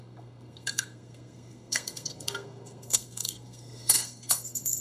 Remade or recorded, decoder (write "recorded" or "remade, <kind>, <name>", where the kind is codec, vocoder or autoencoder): remade, codec, SNAC